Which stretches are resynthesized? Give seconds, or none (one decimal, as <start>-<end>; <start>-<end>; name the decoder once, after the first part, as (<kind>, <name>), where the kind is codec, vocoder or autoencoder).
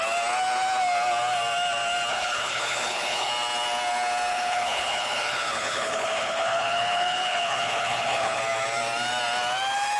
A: 2.1-3.3 (codec, HILCodec); 4.3-8.4